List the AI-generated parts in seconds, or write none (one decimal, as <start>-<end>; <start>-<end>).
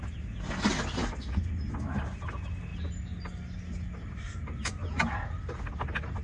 none